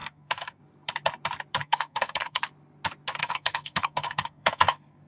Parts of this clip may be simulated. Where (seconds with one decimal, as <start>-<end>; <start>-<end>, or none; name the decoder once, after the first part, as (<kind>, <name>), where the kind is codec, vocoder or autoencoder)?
0.0-0.6 (codec, SNAC); 1.6-2.4; 3.2-5.1